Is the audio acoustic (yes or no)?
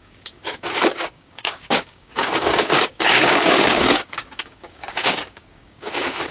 no